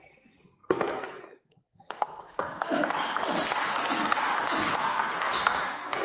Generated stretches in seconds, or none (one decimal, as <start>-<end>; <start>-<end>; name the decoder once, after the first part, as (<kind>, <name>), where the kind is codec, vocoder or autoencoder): 0.0-2.9 (codec, SNAC); 3.7-4.2; 4.8-6.0